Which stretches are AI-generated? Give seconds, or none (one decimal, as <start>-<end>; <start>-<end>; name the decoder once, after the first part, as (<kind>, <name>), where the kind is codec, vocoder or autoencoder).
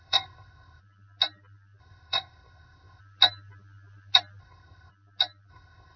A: 0.0-0.8 (codec, ZipCodec); 1.8-3.0; 4.4-4.9; 5.5-6.0